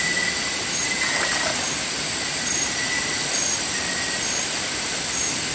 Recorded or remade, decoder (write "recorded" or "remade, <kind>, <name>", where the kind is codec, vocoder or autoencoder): recorded